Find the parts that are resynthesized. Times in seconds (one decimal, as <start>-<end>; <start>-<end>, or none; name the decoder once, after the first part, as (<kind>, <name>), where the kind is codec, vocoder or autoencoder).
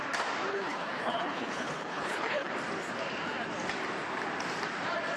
0.5-2.5 (codec, HILCodec)